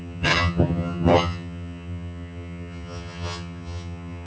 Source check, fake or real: fake